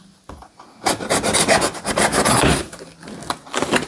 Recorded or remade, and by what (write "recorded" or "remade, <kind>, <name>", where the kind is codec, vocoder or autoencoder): recorded